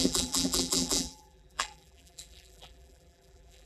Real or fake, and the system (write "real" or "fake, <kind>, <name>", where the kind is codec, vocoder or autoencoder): fake, vocoder, BigVGAN v2